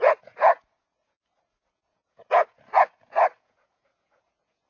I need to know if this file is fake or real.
fake